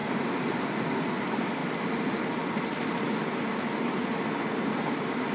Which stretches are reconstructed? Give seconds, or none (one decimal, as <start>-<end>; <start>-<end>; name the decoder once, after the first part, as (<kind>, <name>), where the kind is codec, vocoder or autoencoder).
none